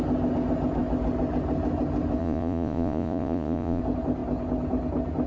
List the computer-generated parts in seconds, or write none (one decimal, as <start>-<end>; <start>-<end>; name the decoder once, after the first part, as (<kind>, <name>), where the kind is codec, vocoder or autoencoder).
2.2-3.8 (vocoder, Vocos)